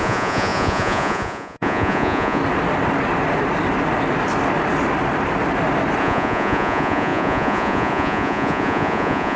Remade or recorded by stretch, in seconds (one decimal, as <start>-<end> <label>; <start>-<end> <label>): 0.0-2.4 remade; 2.4-6.0 recorded; 6.0-9.4 remade

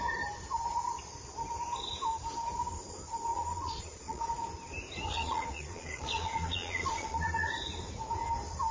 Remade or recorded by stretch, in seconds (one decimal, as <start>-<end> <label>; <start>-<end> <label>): 0.0-3.3 recorded; 3.3-4.3 remade; 4.3-5.1 recorded; 5.1-7.5 remade; 7.5-8.7 recorded

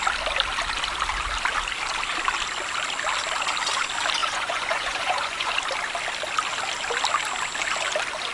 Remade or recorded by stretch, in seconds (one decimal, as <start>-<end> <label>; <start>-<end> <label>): 0.0-4.2 recorded; 4.2-5.5 remade; 5.5-8.3 recorded

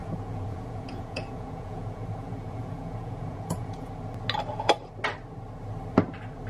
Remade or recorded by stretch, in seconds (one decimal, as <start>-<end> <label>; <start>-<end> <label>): 0.0-3.9 remade; 3.9-6.5 recorded

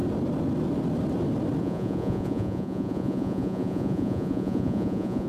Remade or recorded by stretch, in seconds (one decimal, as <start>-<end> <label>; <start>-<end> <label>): 0.0-1.6 recorded; 1.6-5.3 remade

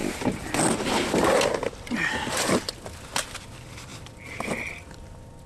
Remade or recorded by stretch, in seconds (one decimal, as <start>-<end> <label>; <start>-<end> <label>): 0.0-5.5 recorded

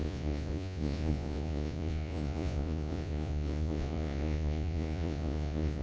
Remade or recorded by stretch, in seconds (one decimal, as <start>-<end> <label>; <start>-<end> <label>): 0.0-5.8 remade